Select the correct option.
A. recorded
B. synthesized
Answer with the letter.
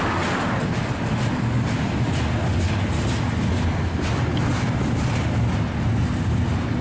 A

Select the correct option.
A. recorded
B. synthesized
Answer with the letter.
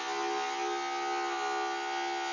A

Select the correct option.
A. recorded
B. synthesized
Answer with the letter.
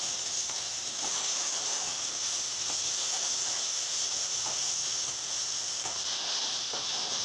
B